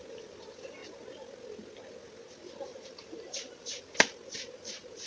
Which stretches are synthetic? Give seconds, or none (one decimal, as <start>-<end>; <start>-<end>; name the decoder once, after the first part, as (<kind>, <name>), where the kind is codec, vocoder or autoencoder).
2.7-3.8 (vocoder, BigVGAN v2)